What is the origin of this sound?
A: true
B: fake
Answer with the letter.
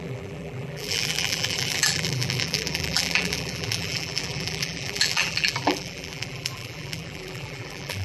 B